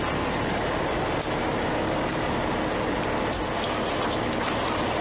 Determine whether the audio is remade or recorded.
recorded